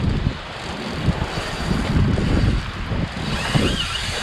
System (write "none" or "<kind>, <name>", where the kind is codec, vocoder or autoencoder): vocoder, BigVGAN v2